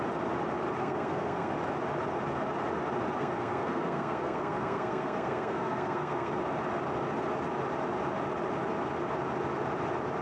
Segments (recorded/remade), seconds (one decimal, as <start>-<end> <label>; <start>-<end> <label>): 0.0-0.8 recorded; 0.8-1.5 remade; 1.5-3.2 recorded; 3.2-6.3 remade; 6.3-10.2 recorded